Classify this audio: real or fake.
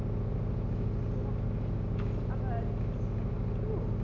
real